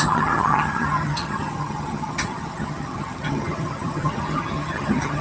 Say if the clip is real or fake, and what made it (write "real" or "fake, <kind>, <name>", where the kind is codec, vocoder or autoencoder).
fake, vocoder, HiFi-GAN